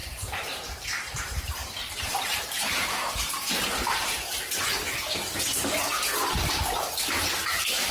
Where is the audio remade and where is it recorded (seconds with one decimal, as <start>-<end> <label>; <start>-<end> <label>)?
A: 0.0-4.7 remade; 4.7-7.9 recorded